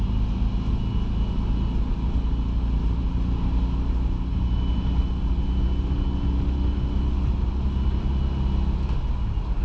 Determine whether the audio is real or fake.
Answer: real